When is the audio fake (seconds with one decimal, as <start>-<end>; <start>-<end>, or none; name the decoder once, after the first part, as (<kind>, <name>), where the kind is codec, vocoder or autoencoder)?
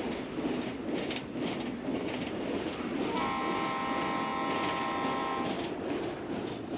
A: none